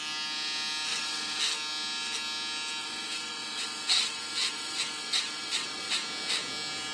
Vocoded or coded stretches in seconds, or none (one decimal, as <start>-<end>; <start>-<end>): 0.9-1.4; 2.8-5.9